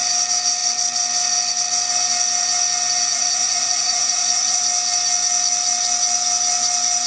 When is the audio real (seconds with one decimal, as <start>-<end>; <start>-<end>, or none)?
0.0-3.1; 4.6-7.1